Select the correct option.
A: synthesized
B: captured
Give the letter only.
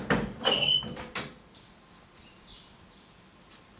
B